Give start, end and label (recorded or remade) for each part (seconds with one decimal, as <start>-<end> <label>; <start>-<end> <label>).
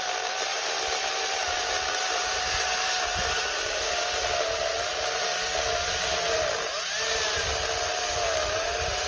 0.0-9.1 recorded